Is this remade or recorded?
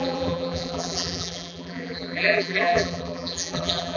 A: remade